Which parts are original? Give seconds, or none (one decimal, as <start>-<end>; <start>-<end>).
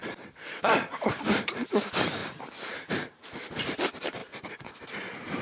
1.7-2.2; 3.6-5.4